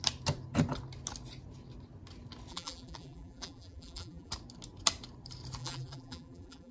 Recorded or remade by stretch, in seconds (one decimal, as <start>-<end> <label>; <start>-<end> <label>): 0.0-2.5 recorded; 2.5-4.3 remade; 4.3-5.6 recorded; 5.6-6.7 remade

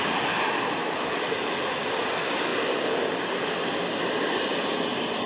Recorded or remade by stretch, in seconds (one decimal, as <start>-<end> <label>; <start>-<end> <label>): 0.0-0.8 recorded; 0.8-1.8 remade; 1.8-5.3 recorded

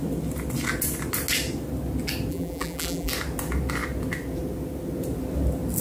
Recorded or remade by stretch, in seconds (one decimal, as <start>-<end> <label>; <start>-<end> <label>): 0.0-2.3 recorded; 2.3-3.1 remade; 3.1-5.8 recorded

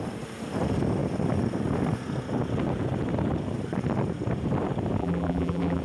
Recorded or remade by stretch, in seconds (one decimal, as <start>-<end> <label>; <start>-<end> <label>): 0.0-5.0 recorded; 5.0-5.8 remade

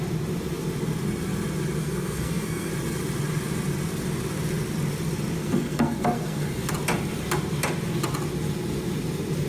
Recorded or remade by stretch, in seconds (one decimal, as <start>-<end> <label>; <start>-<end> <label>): 0.0-1.8 recorded; 1.8-2.7 remade; 2.7-5.4 recorded; 5.4-6.7 remade; 6.7-9.5 recorded

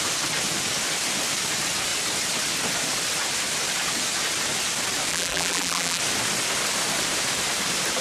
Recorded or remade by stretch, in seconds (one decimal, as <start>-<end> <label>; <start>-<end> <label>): 0.0-5.1 recorded; 5.1-6.0 remade; 6.0-8.0 recorded

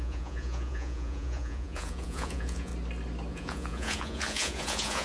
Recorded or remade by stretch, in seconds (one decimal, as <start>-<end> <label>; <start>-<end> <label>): 0.0-2.7 remade; 2.7-3.3 recorded; 3.3-5.0 remade